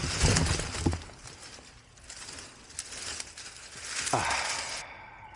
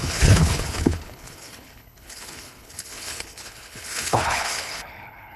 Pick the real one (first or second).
first